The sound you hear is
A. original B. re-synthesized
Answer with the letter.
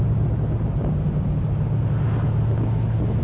A